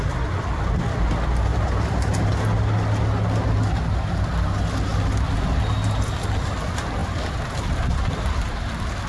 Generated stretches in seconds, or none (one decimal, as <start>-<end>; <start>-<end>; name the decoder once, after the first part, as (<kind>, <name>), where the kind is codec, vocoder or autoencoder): 1.5-2.3 (vocoder, BigVGAN v2)